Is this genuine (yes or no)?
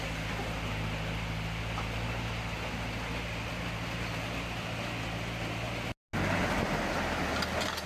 yes